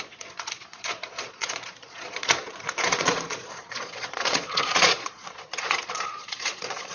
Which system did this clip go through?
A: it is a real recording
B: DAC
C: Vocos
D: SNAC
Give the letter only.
C